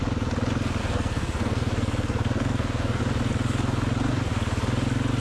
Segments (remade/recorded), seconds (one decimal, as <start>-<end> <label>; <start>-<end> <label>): 0.0-0.8 recorded; 0.8-3.0 remade; 3.0-5.2 recorded